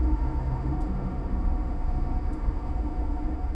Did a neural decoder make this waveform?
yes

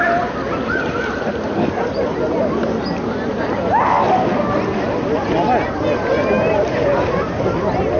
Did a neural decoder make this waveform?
no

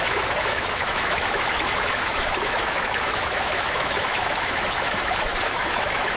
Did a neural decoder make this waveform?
yes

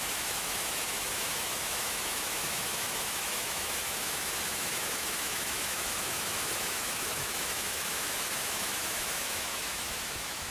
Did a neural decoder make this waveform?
yes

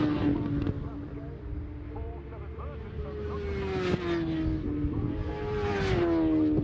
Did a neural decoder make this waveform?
no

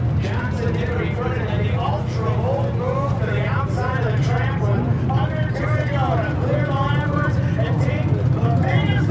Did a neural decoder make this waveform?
no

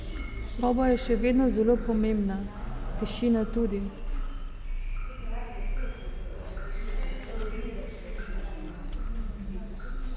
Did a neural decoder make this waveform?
no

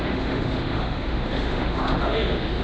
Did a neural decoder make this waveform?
yes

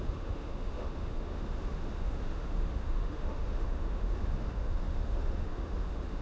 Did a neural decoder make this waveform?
yes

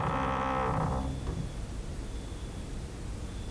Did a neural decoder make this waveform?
no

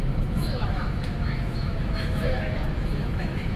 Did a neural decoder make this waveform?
yes